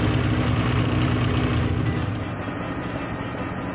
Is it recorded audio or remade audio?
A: recorded